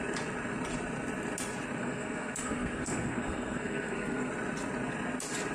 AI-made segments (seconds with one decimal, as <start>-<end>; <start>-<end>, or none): 1.8-4.3